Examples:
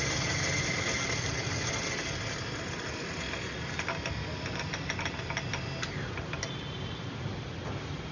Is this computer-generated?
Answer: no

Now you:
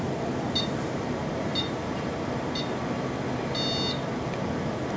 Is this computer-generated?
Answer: no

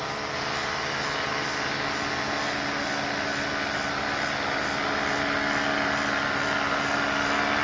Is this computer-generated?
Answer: no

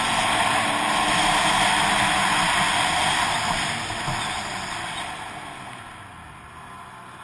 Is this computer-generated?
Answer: no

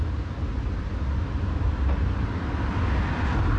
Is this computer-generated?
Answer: no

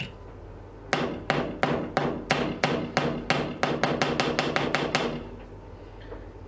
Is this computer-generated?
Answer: no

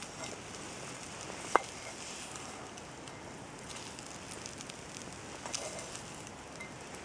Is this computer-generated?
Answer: no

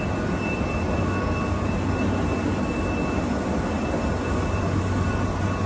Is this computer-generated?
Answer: no